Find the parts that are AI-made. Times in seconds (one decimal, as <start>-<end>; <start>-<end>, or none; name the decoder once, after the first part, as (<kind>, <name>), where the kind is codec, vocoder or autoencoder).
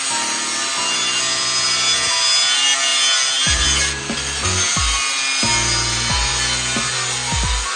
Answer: none